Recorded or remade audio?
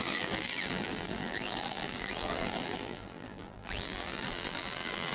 remade